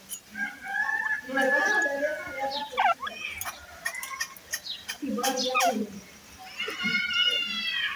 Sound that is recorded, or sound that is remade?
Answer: recorded